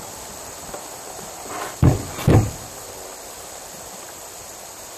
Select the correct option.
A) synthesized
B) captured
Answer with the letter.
B